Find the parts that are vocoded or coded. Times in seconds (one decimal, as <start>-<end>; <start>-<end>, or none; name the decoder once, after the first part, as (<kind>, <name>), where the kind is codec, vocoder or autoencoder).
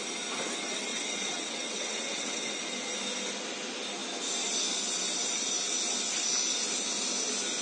0.9-2.5 (vocoder, WaveNeXt)